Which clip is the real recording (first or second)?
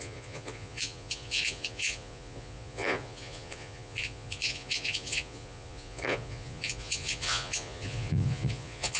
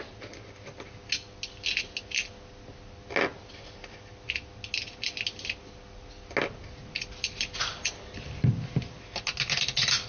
second